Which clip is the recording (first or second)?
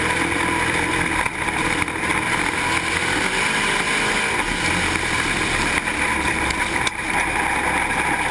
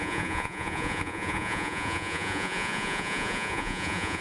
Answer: first